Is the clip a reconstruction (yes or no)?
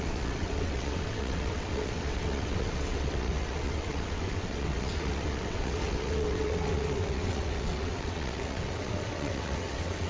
yes